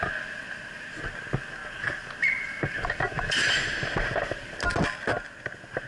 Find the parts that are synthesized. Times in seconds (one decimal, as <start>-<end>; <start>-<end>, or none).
none